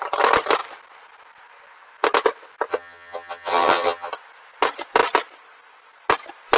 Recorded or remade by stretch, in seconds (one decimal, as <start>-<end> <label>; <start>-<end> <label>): 0.0-2.7 recorded; 2.7-4.1 remade; 4.1-6.6 recorded